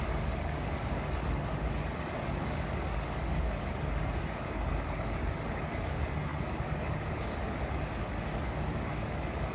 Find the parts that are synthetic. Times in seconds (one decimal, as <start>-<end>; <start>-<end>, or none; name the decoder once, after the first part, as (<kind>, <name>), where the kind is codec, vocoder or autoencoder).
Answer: 0.0-9.5 (codec, DAC)